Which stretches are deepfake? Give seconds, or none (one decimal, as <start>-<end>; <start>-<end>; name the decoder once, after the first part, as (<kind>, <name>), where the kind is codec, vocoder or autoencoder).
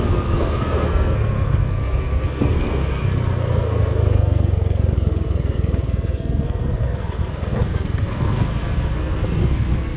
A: 0.0-3.0 (codec, SNAC); 3.5-10.0